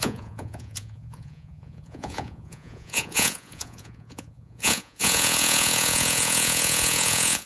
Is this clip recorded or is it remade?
remade